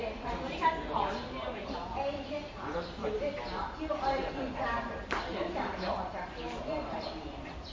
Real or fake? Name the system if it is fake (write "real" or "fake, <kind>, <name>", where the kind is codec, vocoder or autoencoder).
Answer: fake, vocoder, BigVGAN v2